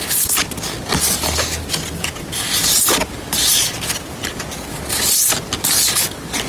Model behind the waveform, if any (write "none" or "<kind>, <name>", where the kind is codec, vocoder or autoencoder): none